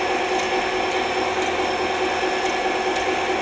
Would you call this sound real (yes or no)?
yes